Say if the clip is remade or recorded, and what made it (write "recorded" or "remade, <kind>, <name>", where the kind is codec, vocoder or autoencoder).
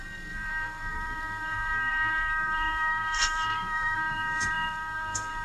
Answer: remade, codec, SNAC